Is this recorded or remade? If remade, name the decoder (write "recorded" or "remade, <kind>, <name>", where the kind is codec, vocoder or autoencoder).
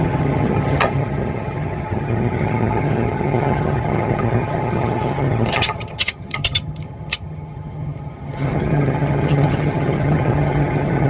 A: remade, vocoder, HiFi-GAN